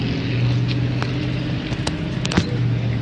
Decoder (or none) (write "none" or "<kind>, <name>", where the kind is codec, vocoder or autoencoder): none